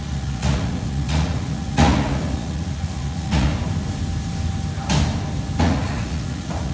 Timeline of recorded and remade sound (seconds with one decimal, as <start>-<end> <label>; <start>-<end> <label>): 0.0-3.5 remade; 3.5-5.6 recorded; 5.6-6.7 remade